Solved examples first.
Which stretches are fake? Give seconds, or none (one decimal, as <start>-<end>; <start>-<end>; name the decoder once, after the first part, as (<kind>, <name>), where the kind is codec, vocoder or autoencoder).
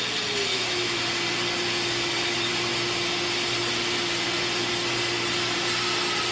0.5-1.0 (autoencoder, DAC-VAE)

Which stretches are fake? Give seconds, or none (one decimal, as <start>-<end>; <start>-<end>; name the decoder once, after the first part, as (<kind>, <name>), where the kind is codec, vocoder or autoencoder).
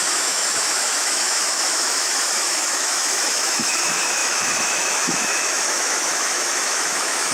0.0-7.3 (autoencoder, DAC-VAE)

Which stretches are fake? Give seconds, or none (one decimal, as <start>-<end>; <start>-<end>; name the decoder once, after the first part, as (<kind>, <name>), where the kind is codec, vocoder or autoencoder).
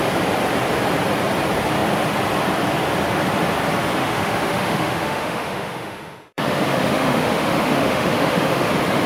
4.0-8.7 (autoencoder, DAC-VAE)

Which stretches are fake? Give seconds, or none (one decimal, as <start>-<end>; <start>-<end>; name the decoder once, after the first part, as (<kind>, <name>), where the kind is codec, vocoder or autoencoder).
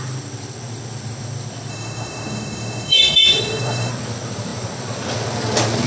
1.7-3.9 (autoencoder, DAC-VAE)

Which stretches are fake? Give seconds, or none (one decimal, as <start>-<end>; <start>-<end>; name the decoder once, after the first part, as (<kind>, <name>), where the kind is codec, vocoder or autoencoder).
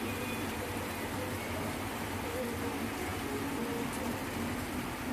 none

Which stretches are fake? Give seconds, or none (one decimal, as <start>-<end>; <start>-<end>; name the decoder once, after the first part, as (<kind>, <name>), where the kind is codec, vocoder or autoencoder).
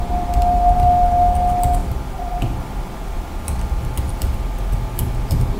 none